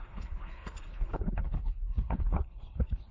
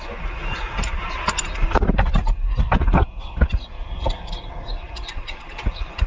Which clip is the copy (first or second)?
first